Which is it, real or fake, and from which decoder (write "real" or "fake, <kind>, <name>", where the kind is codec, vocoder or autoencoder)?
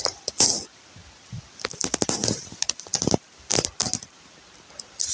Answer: real